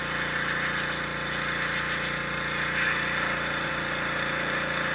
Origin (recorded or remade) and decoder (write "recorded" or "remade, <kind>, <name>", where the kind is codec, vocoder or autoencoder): recorded